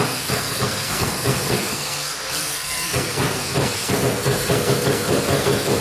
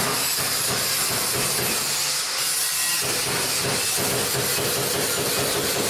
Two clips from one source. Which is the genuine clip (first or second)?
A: second